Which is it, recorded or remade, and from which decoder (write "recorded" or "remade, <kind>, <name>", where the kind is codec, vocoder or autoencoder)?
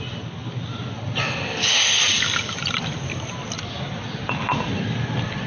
recorded